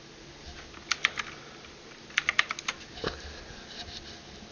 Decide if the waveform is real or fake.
real